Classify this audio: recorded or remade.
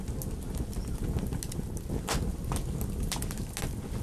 recorded